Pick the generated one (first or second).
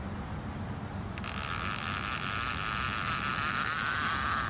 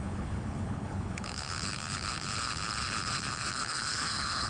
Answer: second